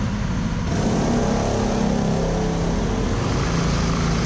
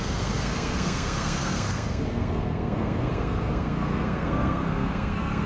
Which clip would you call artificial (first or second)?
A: second